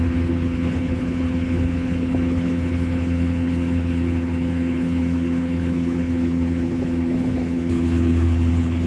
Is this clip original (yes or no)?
no